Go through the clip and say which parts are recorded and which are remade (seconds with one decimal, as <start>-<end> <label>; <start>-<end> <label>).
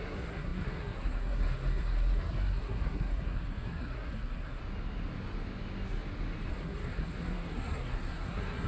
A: 0.0-4.6 remade; 4.6-6.5 recorded; 6.5-8.7 remade